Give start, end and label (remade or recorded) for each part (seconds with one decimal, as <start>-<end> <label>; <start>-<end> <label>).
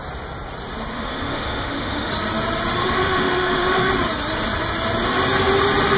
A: 0.0-0.9 recorded; 0.9-2.1 remade; 2.1-2.8 recorded; 2.8-3.9 remade; 3.9-6.0 recorded